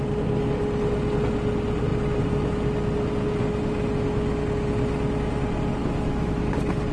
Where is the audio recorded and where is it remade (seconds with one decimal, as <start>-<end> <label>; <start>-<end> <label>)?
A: 0.0-5.8 recorded; 5.8-6.5 remade; 6.5-6.9 recorded